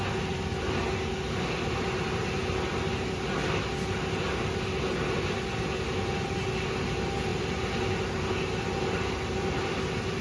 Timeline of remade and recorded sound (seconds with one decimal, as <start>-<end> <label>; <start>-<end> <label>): 0.0-10.2 recorded